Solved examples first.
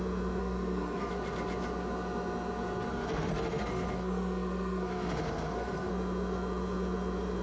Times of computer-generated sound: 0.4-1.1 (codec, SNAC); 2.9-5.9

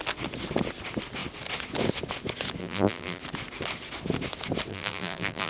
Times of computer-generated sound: 2.6-3.2 (vocoder, BigVGAN v2); 4.7-5.5